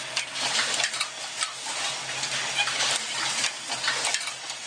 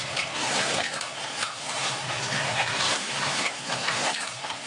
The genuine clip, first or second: first